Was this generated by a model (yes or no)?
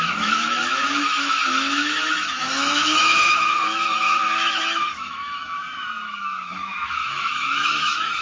yes